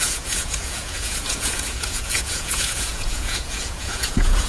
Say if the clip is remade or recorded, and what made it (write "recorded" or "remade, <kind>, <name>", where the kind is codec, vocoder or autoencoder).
remade, vocoder, Vocos